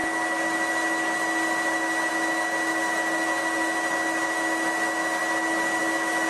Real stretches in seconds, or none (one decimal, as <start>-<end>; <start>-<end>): 0.0-6.3